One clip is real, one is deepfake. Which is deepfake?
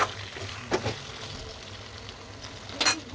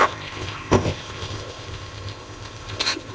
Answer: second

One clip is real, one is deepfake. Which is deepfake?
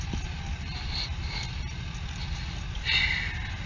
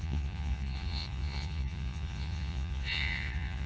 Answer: second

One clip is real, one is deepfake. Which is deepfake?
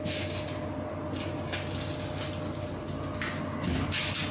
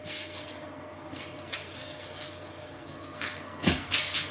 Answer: second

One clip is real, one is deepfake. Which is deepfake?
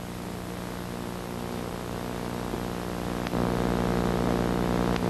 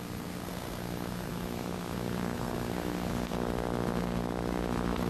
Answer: second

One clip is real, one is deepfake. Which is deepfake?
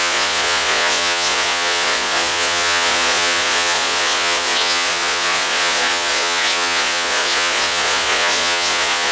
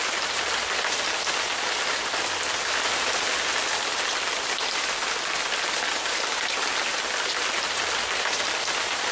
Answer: first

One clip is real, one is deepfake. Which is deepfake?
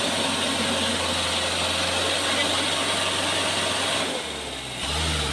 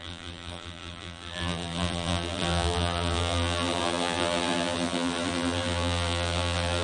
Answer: second